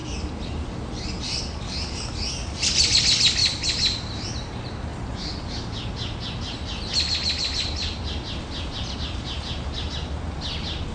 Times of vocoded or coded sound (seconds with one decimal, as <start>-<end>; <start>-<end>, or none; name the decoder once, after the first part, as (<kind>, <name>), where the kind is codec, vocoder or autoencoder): none